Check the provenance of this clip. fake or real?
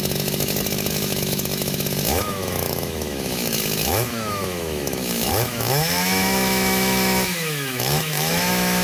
fake